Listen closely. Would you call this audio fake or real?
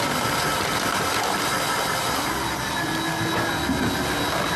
real